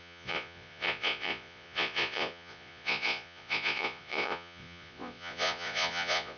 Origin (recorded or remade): remade